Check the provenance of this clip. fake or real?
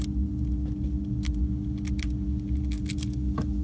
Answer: real